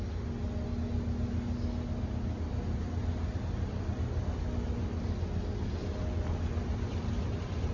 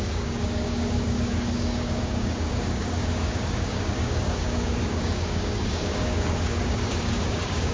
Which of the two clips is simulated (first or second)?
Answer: second